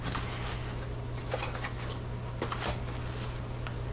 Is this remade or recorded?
recorded